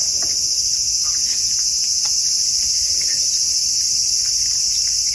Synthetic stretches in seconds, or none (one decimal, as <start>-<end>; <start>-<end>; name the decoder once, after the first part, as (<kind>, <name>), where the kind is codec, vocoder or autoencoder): none